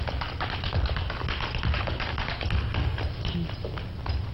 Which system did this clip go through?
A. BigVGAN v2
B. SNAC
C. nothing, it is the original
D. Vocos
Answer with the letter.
C